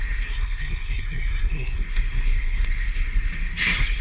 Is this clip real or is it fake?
fake